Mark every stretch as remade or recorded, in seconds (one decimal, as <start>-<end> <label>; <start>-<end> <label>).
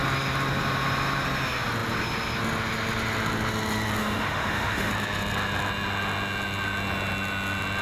0.0-4.0 recorded; 4.0-4.9 remade; 4.9-7.8 recorded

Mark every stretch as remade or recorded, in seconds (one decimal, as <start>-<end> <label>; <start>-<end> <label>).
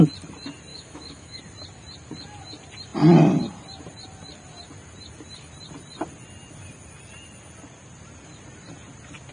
0.0-0.7 recorded; 0.7-1.4 remade; 1.4-9.3 recorded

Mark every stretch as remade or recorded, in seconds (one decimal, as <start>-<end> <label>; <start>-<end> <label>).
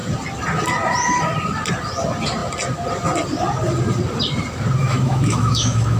0.0-4.8 recorded; 4.8-6.0 remade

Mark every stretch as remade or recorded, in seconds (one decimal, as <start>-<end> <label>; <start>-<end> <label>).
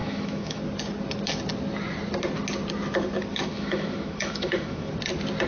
0.0-0.6 remade; 0.6-3.3 recorded; 3.3-4.9 remade; 4.9-5.5 recorded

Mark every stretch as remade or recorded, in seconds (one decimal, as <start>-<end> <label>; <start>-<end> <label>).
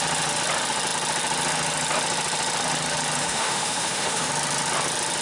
0.0-3.2 recorded; 3.2-4.3 remade; 4.3-5.2 recorded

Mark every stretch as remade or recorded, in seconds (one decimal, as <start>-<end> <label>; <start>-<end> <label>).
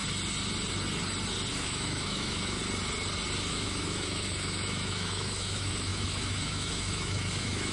0.0-1.5 recorded; 1.5-2.6 remade; 2.6-3.5 recorded; 3.5-7.7 remade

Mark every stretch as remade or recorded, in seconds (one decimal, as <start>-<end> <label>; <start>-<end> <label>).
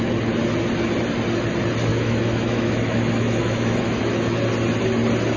0.0-1.9 recorded; 1.9-4.4 remade; 4.4-5.4 recorded